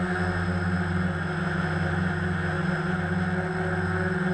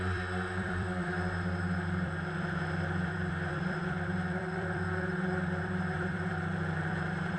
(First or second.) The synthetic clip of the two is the second